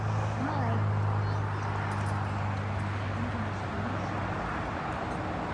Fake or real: real